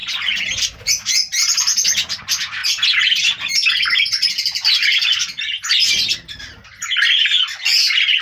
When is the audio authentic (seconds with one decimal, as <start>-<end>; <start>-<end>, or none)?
0.0-8.2